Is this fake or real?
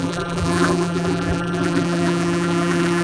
fake